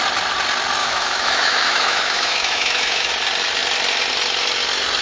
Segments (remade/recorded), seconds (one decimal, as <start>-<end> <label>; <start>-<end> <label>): 0.0-0.8 recorded; 0.8-3.1 remade; 3.1-5.0 recorded